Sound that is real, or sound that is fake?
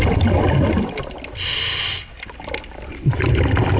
real